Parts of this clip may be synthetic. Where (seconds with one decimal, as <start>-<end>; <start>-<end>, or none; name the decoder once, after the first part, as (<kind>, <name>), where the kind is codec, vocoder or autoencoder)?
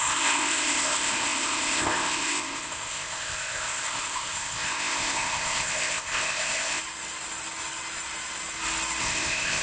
0.0-6.8 (codec, ZipCodec); 9.0-9.6